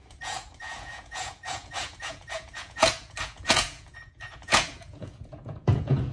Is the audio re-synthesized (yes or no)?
yes